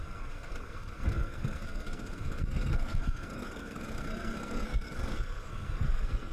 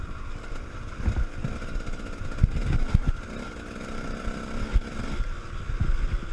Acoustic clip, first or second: second